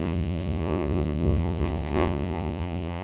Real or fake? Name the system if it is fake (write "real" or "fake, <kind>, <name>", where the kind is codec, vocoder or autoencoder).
fake, vocoder, Vocos